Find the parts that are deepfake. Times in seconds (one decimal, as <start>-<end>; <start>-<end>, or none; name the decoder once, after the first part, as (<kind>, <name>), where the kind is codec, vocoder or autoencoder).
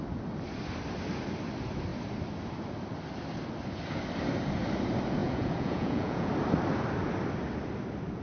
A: 5.2-6.3 (vocoder, Vocos)